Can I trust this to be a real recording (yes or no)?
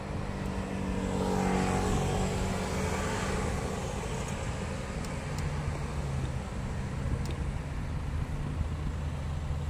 yes